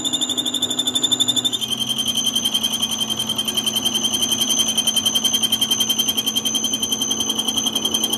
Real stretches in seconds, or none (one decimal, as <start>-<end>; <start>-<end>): 0.0-8.2